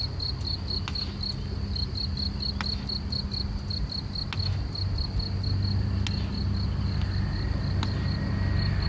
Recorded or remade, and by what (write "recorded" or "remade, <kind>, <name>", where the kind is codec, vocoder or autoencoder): recorded